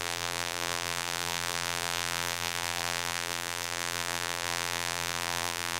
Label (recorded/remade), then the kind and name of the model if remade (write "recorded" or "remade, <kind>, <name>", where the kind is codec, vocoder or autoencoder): remade, vocoder, BigVGAN v2